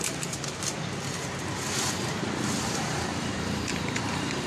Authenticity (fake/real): fake